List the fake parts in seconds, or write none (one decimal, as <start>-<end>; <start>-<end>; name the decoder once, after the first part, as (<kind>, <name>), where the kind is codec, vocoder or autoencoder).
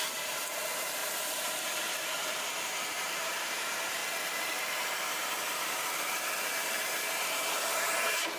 0.0-4.0 (vocoder, BigVGAN v2); 4.6-8.4